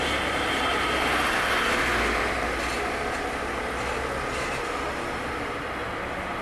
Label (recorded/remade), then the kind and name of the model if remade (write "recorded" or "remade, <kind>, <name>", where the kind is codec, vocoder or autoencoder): recorded